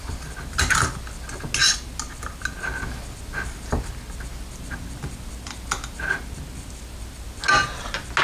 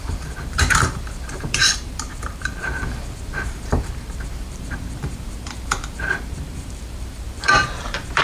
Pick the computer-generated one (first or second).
second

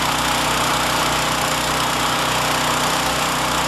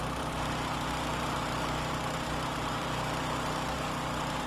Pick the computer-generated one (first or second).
second